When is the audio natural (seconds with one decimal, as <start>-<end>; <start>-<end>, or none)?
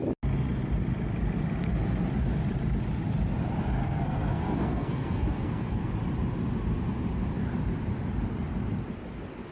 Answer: 0.0-3.8; 5.9-9.5